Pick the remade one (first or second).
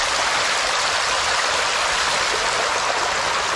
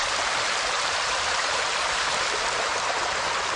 second